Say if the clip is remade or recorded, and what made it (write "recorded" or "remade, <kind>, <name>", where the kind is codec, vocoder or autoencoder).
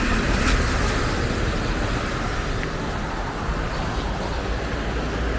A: recorded